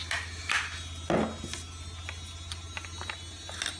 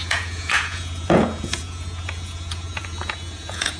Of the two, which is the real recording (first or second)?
first